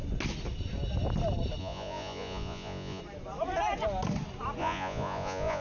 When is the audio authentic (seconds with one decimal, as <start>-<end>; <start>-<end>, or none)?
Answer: 0.0-1.6; 3.0-4.6